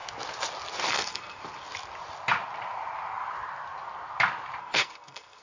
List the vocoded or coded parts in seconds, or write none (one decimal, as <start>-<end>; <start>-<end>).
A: 0.9-1.4; 4.6-5.4